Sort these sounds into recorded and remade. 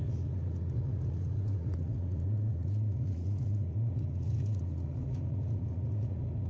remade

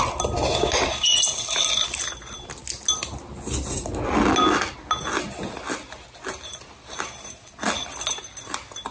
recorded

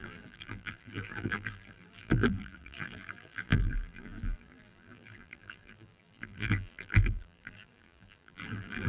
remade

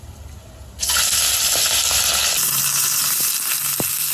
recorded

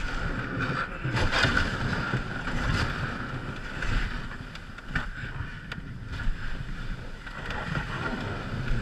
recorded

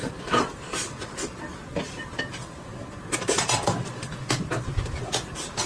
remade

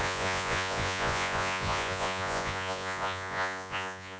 remade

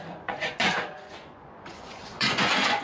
remade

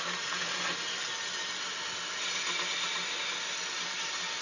recorded